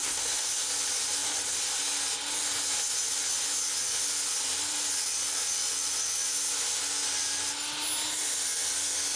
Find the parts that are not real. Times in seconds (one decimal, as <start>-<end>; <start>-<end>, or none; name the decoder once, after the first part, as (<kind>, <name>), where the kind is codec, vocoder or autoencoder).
0.0-0.6 (codec, SNAC)

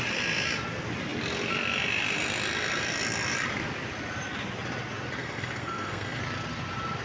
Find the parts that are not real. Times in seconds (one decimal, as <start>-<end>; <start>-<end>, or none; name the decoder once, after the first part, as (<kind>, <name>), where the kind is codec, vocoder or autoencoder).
5.2-6.2 (codec, SNAC)

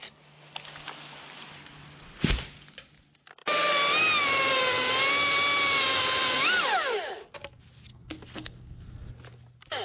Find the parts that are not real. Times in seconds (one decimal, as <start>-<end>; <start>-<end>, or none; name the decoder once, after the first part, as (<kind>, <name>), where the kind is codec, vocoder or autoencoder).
7.9-9.1 (codec, SNAC)

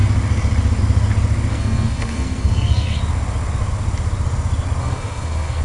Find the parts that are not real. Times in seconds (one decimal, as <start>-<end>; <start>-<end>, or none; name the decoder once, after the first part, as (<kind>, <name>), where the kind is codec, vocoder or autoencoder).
1.5-3.0 (codec, SNAC); 4.8-5.6

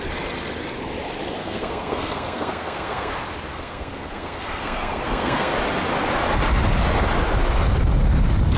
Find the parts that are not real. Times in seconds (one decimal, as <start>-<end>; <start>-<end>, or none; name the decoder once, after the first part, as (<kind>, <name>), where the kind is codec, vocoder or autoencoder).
1.4-3.1 (codec, SNAC); 3.5-5.5

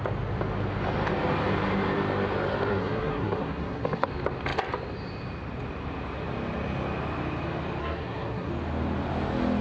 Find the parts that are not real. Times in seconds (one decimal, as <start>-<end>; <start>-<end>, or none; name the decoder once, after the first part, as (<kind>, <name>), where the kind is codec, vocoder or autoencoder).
2.7-4.1 (codec, SNAC); 7.8-8.5